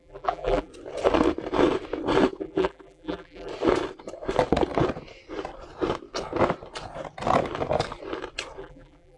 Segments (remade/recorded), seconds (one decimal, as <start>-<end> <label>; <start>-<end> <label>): 0.0-0.7 remade; 0.7-2.4 recorded; 2.4-3.5 remade; 3.5-8.6 recorded; 8.6-9.2 remade